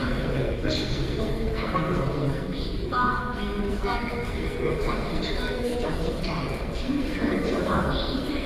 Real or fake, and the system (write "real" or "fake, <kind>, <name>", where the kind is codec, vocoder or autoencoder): fake, codec, SNAC